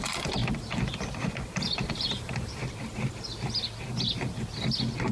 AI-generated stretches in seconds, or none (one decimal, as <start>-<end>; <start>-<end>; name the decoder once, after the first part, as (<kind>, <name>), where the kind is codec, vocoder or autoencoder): 0.0-0.4 (vocoder, BigVGAN v2); 1.9-2.6